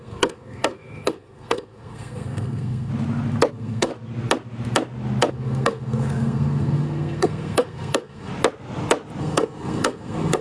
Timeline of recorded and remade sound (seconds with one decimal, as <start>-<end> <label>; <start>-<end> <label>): 0.0-2.9 remade; 2.9-3.5 recorded; 3.5-3.9 remade; 3.9-5.3 recorded; 5.3-8.3 remade; 8.3-9.2 recorded; 9.2-10.4 remade